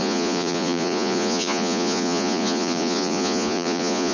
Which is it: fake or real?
fake